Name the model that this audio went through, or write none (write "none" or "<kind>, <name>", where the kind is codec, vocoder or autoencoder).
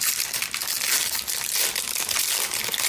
none